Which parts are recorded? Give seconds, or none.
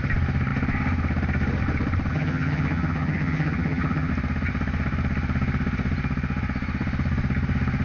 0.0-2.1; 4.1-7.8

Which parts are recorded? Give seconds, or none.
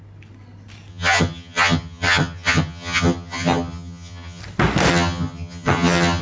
0.0-0.9; 4.4-4.9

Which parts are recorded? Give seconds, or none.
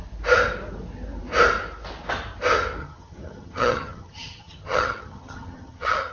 0.0-2.8